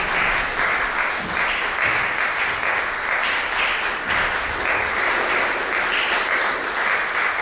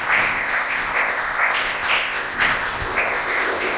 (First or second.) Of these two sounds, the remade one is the second